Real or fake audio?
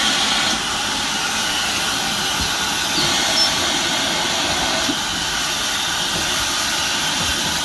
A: real